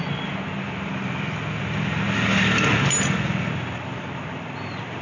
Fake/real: real